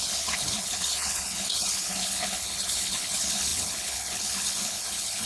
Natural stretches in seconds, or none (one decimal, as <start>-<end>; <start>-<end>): none